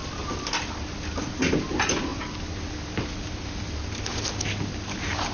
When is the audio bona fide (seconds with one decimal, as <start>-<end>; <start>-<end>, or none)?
0.0-5.3

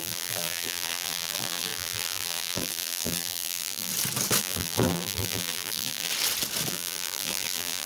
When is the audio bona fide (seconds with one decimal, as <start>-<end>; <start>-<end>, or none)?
3.9-4.4; 6.1-6.7

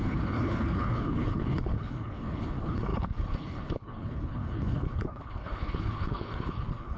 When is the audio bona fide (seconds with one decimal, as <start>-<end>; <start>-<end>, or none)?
none

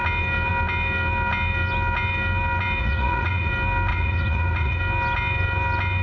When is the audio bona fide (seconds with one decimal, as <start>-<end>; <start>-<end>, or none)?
0.0-2.8; 3.5-3.9; 4.8-6.0

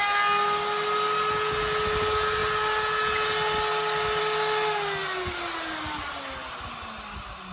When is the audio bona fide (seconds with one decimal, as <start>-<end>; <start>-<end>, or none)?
0.0-7.5

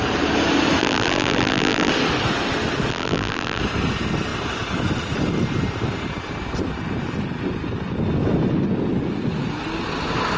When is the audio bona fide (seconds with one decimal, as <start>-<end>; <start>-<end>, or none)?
0.0-0.8; 1.9-2.9; 3.6-10.4

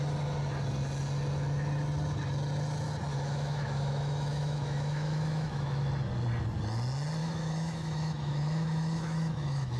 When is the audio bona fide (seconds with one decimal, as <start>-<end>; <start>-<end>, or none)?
0.0-3.1; 5.9-7.2

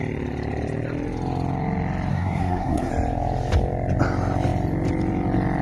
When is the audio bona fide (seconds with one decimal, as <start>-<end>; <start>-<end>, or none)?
0.0-2.1; 2.9-5.6